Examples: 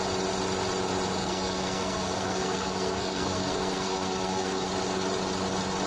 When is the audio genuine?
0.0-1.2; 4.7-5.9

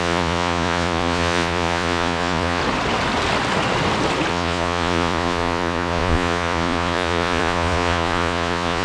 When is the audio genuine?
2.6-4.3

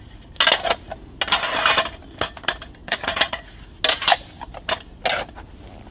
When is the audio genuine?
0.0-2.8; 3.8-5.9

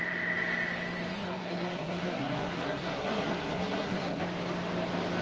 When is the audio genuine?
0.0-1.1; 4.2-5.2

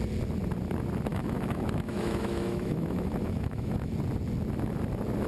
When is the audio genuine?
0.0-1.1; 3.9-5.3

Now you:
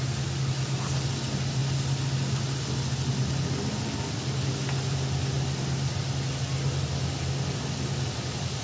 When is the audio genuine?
0.0-8.6

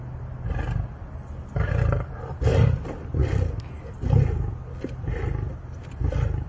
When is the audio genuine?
0.0-6.5

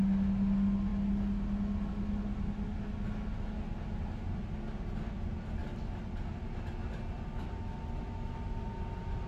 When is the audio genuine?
0.0-9.3